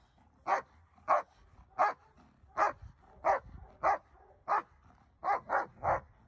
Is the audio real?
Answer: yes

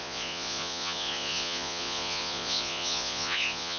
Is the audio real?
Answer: no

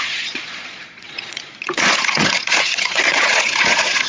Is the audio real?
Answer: no